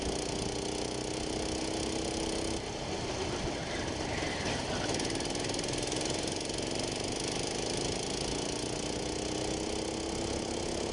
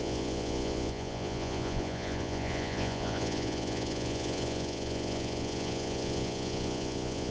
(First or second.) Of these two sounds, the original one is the first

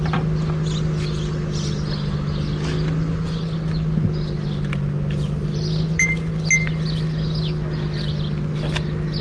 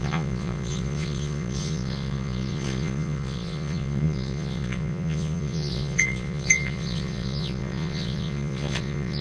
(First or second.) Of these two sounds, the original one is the first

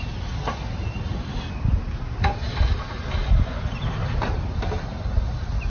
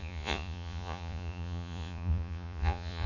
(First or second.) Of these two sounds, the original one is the first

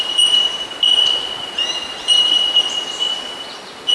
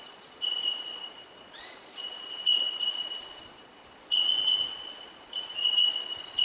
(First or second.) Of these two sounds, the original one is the first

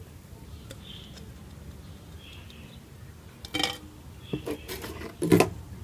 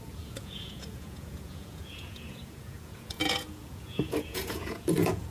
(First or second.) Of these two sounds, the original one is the first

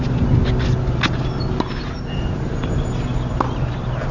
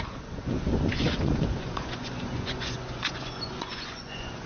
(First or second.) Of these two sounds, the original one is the first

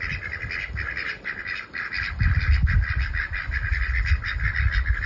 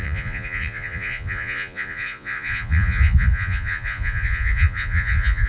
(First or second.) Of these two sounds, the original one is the first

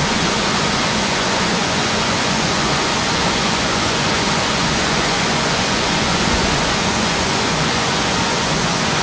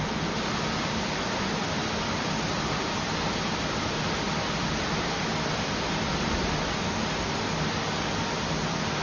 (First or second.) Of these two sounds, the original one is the second